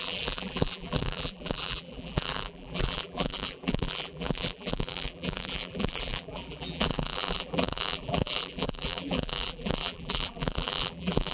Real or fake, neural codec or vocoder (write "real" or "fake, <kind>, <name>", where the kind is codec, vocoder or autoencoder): fake, vocoder, BigVGAN v2